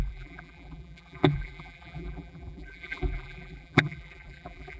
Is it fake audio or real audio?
fake